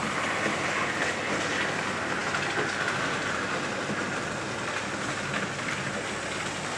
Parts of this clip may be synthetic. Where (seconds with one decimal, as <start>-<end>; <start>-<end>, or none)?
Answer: none